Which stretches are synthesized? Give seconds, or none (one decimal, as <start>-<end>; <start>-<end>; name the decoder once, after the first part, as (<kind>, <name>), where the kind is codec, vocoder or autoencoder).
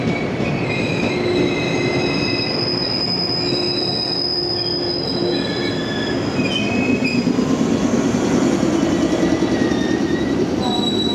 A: none